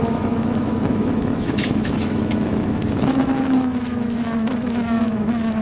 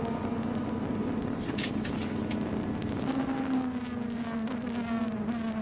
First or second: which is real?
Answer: second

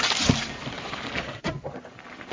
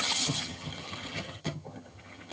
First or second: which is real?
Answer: first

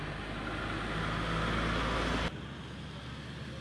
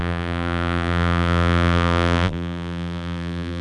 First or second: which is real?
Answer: first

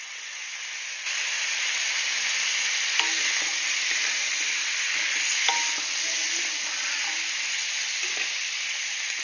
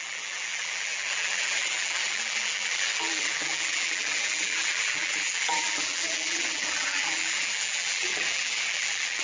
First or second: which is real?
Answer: first